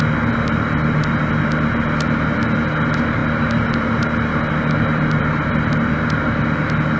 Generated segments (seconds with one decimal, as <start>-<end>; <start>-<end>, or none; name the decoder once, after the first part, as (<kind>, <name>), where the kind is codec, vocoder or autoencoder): none